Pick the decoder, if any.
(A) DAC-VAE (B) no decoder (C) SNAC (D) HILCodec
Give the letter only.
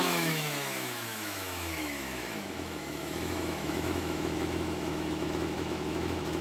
A